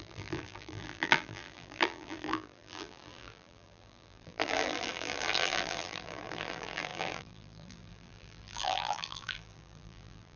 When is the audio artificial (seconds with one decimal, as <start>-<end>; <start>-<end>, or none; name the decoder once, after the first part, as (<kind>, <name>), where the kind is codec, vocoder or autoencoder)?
0.0-10.4 (vocoder, BigVGAN v2)